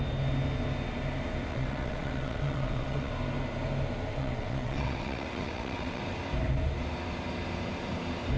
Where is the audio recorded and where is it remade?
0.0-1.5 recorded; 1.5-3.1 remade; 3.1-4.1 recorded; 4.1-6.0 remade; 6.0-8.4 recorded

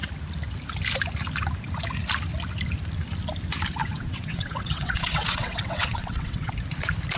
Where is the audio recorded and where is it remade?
0.0-3.8 recorded; 3.8-6.5 remade; 6.5-7.2 recorded

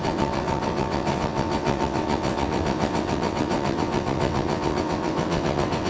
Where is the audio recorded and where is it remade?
0.0-5.9 remade